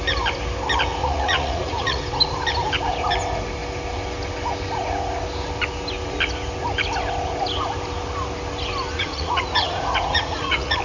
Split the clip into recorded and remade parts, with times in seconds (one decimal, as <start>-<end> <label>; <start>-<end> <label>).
0.0-1.0 recorded; 1.0-2.0 remade; 2.0-8.9 recorded; 8.9-10.8 remade